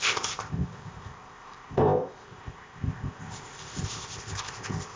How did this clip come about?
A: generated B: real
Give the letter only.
A